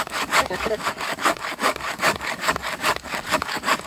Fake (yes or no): yes